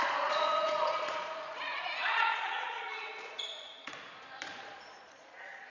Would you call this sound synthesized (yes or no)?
yes